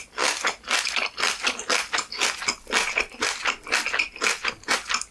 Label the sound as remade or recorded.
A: recorded